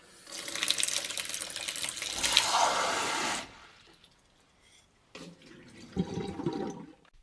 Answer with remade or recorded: recorded